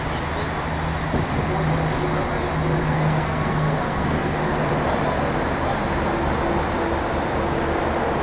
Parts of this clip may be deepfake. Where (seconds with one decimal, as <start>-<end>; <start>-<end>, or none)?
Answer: 2.8-4.7